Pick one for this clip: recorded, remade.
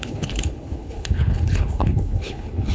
remade